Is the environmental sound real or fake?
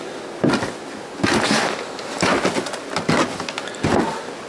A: real